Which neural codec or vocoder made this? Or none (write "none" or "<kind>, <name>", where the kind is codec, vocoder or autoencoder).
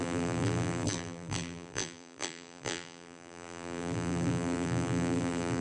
vocoder, BigVGAN v2